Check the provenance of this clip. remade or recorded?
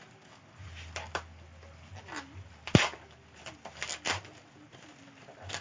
recorded